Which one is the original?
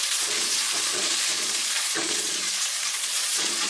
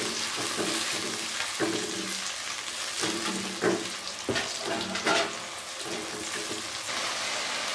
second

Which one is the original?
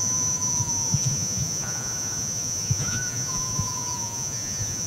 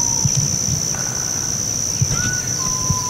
second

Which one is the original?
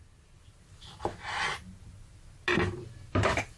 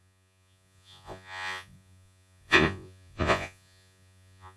first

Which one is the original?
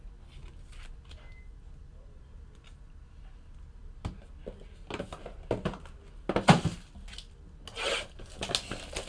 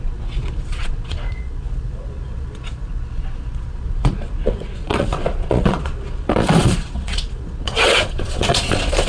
first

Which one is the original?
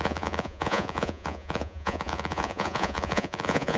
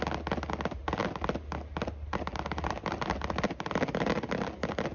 second